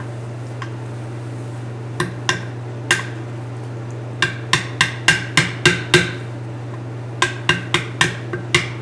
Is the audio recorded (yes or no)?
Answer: yes